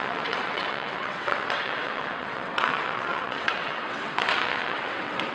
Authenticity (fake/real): fake